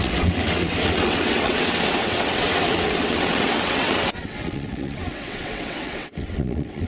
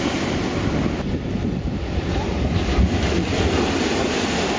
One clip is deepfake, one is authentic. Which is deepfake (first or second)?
first